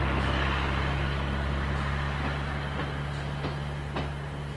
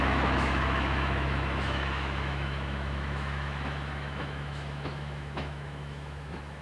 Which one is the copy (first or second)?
second